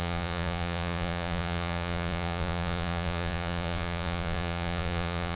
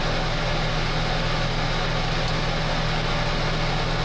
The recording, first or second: second